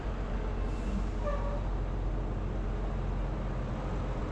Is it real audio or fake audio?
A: real